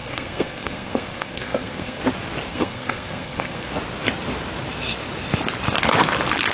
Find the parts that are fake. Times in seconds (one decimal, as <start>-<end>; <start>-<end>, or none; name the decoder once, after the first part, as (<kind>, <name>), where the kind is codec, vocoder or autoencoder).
0.0-2.0 (codec, SNAC); 2.5-3.7

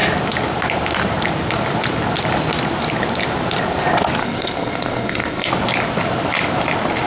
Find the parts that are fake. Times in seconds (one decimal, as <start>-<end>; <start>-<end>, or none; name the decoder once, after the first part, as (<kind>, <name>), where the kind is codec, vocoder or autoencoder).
4.2-5.5 (codec, SNAC)

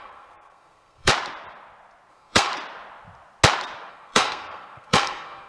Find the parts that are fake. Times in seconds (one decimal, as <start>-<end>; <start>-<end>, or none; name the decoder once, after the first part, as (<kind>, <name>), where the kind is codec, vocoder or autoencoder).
0.0-1.1 (codec, SNAC); 2.1-2.5; 3.9-5.5

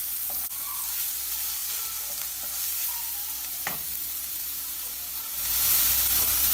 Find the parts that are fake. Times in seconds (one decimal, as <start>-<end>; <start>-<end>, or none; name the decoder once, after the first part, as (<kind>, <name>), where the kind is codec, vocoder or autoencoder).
4.4-5.8 (vocoder, Vocos)